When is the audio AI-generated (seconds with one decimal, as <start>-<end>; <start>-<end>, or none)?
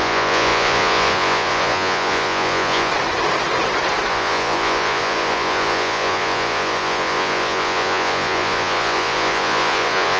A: 0.0-2.9; 4.1-10.2